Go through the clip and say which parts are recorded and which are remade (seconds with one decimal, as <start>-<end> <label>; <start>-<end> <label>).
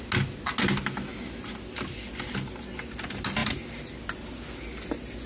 0.0-5.3 recorded